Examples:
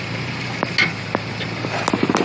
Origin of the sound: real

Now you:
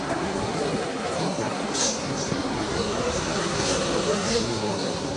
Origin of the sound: fake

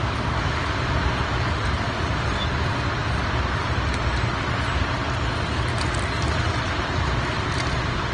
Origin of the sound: real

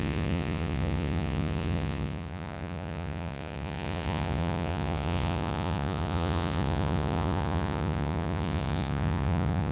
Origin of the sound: fake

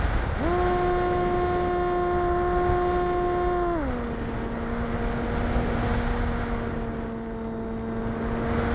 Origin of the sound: real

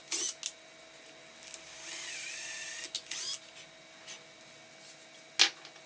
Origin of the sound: real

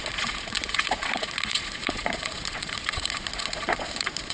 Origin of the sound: fake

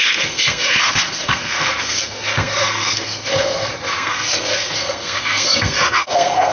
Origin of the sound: fake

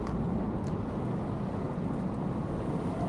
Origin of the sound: real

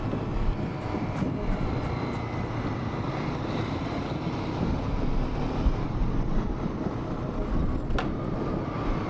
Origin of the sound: real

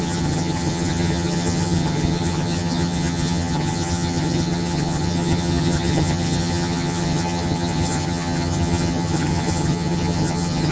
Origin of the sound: fake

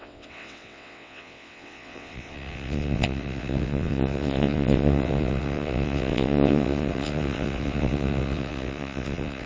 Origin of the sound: fake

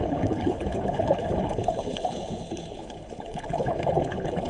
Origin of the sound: fake